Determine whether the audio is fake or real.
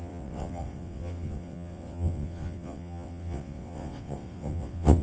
fake